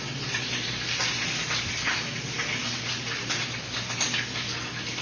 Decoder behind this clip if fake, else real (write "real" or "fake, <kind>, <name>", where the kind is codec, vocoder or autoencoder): real